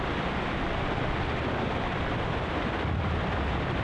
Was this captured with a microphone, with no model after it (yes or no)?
yes